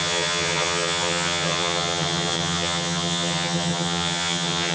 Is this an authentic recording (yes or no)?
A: no